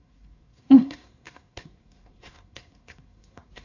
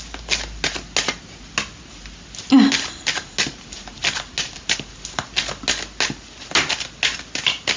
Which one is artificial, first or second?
first